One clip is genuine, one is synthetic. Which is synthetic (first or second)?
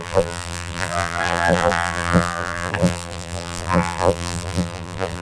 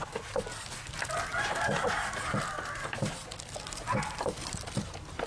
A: first